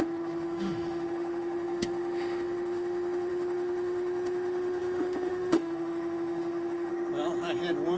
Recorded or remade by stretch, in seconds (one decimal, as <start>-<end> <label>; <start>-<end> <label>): 0.0-6.9 remade; 6.9-8.0 recorded